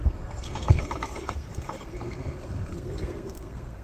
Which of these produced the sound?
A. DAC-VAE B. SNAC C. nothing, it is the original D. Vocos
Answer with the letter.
B